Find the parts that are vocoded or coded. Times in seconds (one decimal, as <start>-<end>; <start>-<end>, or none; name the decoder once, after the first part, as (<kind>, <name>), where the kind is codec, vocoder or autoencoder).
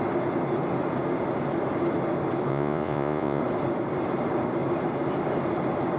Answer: 2.5-3.4 (vocoder, Vocos)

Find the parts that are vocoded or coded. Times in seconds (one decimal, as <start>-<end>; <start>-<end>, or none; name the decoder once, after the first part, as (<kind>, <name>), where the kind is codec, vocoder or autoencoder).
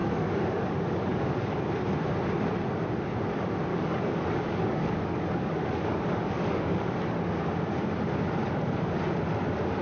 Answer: 0.0-1.7 (codec, DAC); 3.7-7.0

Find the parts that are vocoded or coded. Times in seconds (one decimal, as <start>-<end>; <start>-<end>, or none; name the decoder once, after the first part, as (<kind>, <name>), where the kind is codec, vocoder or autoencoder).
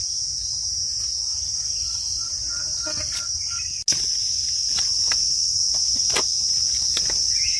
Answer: none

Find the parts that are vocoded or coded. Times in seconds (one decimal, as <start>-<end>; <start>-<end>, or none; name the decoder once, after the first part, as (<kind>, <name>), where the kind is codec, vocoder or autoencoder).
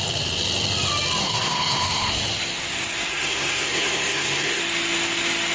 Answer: 1.2-2.2 (codec, SNAC); 3.1-4.6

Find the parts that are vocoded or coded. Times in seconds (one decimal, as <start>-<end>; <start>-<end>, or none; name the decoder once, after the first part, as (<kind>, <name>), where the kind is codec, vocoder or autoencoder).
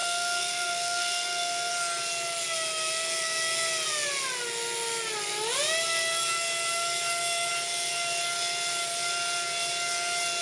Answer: 0.0-1.7 (codec, SNAC)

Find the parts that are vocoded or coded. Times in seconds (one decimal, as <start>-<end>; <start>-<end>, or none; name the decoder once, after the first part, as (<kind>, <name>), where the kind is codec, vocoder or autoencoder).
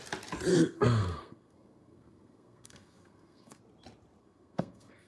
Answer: 0.5-3.6 (codec, SNAC); 4.2-5.1